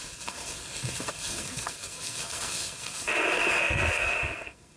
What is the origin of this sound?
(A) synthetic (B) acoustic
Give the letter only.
A